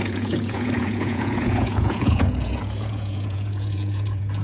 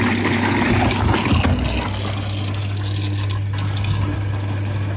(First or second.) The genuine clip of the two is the second